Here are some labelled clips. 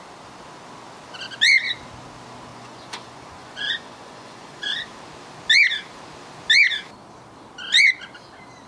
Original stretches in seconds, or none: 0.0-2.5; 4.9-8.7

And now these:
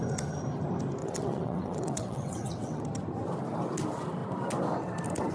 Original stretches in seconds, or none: 0.0-1.0; 2.8-5.3

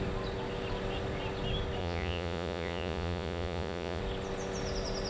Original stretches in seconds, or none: 0.0-1.8; 4.0-5.1

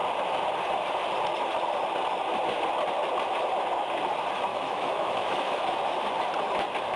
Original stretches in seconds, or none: 0.0-4.5; 5.6-7.0

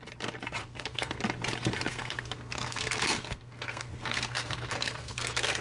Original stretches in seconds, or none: 0.0-0.6; 1.2-1.9

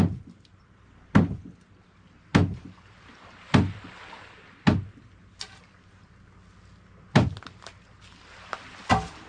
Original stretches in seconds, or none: 0.0-9.3

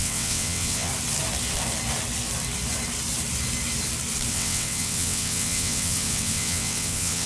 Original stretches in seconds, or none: 0.9-4.3

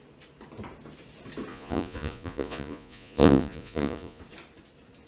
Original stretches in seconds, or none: 0.0-1.5; 4.2-5.1